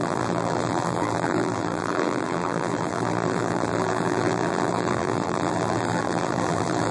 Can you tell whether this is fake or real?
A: fake